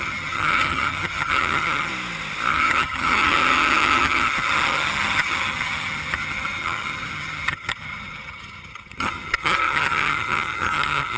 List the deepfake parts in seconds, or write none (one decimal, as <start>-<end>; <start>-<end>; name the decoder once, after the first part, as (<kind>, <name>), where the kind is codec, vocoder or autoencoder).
0.0-1.9 (vocoder, HiFi-GAN); 2.5-11.2